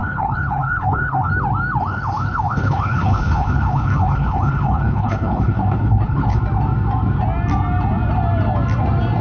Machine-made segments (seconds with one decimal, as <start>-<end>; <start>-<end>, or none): 0.0-1.3; 1.8-6.4